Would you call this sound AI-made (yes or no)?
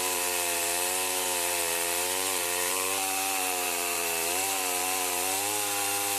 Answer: yes